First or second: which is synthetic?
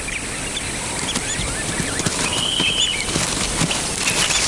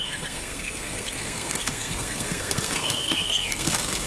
second